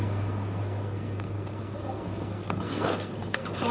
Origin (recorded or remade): remade